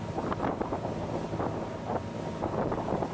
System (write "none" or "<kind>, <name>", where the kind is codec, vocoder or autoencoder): none